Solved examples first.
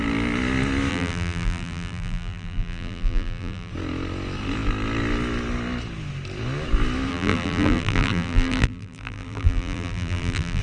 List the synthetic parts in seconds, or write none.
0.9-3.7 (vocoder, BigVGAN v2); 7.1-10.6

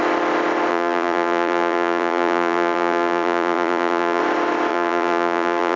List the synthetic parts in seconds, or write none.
0.7-4.2 (vocoder, BigVGAN v2); 4.7-5.8

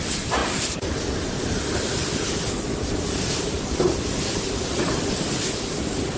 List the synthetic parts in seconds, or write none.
0.0-0.4 (vocoder, BigVGAN v2); 1.2-6.2

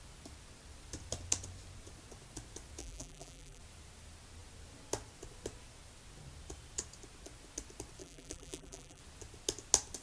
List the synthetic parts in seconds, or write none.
2.8-3.6 (vocoder, BigVGAN v2); 8.0-9.0

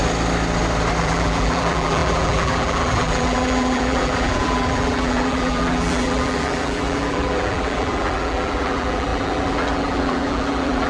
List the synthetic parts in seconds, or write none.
1.0-10.9 (vocoder, BigVGAN v2)

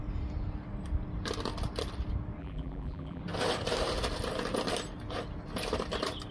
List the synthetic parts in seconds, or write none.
2.4-3.2 (vocoder, BigVGAN v2)

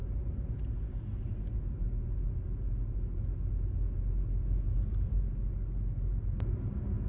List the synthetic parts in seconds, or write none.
none

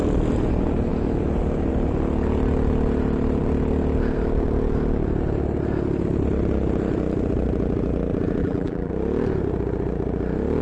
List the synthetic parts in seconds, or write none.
8.4-8.9 (vocoder, BigVGAN v2)